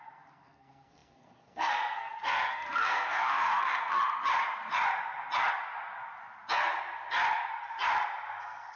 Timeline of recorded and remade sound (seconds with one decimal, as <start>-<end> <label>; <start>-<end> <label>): 0.0-4.0 remade; 4.0-8.4 recorded; 8.4-8.8 remade